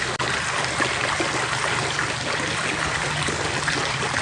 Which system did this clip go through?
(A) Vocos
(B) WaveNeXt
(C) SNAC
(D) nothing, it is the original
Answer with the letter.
D